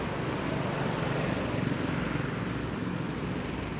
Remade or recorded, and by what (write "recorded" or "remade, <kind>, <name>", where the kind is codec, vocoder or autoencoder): recorded